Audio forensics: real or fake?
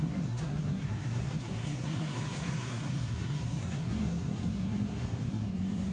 fake